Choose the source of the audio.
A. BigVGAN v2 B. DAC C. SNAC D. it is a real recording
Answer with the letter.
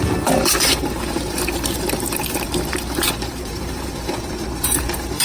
A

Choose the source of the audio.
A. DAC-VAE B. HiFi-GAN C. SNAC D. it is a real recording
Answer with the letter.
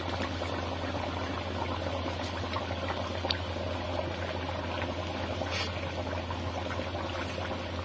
D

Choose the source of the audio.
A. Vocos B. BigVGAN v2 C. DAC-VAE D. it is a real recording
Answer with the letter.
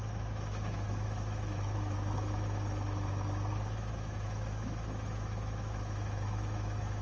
C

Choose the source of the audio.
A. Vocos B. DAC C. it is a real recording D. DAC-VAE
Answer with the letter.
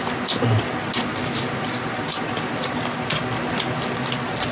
C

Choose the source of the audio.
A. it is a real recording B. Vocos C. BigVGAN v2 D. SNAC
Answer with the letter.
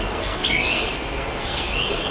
D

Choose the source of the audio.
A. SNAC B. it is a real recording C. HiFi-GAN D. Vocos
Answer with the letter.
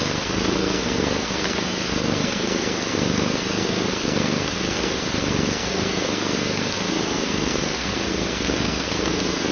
A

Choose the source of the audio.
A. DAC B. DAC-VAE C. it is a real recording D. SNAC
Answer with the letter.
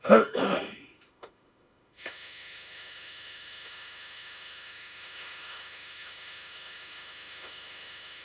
B